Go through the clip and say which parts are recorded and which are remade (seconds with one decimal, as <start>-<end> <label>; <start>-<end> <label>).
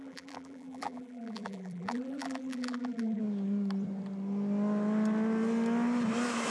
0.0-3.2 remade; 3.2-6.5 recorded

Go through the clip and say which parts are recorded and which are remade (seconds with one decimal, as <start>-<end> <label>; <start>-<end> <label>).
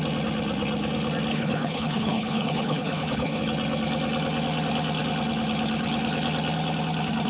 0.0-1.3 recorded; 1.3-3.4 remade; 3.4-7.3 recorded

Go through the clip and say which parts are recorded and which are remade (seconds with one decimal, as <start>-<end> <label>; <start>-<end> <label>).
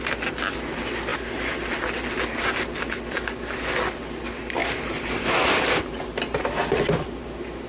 0.0-4.6 recorded; 4.6-6.8 remade; 6.8-7.7 recorded